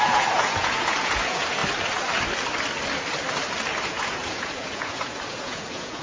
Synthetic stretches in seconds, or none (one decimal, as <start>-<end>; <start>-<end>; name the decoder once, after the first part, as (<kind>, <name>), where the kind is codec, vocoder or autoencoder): 0.0-1.6 (vocoder, Vocos); 3.9-6.0